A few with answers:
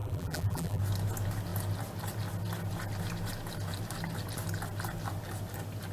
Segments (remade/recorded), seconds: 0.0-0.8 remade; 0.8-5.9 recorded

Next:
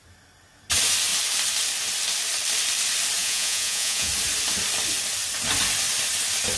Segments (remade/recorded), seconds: 0.0-3.2 recorded; 3.2-4.1 remade; 4.1-6.6 recorded

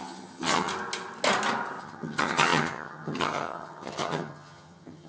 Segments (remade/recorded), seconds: 0.0-0.7 remade; 0.7-1.8 recorded; 1.8-5.1 remade

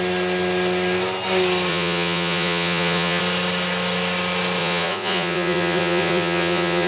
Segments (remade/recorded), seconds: 0.0-1.7 recorded; 1.7-3.2 remade; 3.2-4.6 recorded; 4.6-6.9 remade

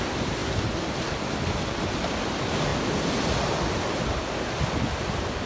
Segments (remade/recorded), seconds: 0.0-5.5 recorded